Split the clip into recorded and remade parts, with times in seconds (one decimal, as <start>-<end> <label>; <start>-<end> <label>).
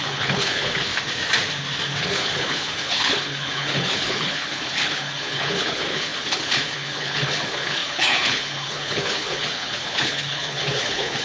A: 0.0-0.9 remade; 0.9-2.0 recorded; 2.0-11.2 remade